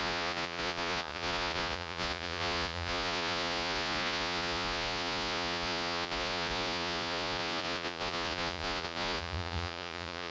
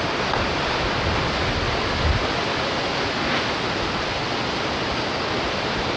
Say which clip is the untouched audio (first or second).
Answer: second